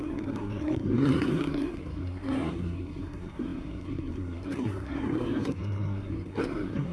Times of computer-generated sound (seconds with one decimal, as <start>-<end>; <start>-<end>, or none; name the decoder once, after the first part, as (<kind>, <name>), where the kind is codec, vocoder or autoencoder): 0.0-6.9 (codec, SNAC)